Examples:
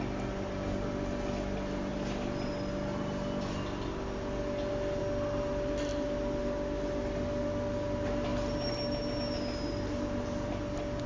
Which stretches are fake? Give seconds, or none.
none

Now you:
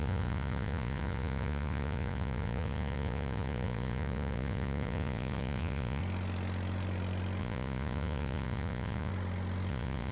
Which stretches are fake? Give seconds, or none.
0.0-6.0 (vocoder, Vocos); 7.4-9.1; 9.7-10.1

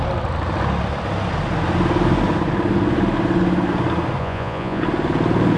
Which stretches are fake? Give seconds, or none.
4.2-4.8 (vocoder, Vocos)

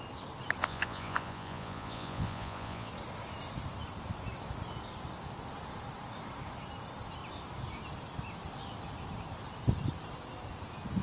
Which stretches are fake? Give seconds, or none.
0.6-2.9 (vocoder, Vocos)